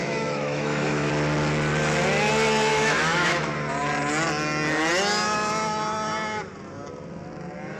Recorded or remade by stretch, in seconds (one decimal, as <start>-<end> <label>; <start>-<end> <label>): 0.0-1.1 remade; 1.1-2.7 recorded; 2.7-3.5 remade; 3.5-7.8 recorded